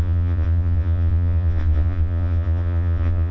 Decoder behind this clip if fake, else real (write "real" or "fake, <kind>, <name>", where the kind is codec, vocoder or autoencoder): fake, vocoder, Vocos